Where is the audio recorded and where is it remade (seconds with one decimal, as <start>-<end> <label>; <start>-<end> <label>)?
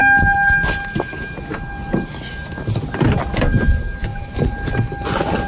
0.0-4.1 recorded; 4.1-4.7 remade; 4.7-5.5 recorded